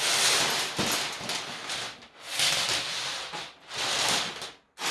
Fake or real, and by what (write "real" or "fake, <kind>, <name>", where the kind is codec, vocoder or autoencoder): real